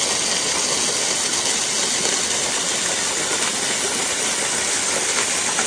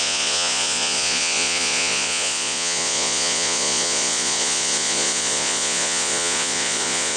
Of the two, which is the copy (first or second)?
second